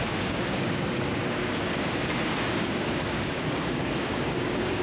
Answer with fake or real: fake